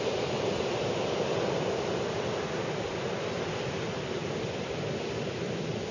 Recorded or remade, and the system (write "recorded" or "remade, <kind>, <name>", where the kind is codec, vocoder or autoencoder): recorded